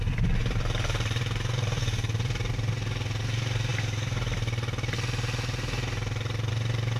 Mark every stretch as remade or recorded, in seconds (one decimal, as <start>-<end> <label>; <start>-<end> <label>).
0.0-0.4 recorded; 0.4-2.5 remade; 2.5-7.0 recorded